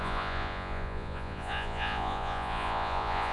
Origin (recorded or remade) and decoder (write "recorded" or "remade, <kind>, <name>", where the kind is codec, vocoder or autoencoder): remade, vocoder, Vocos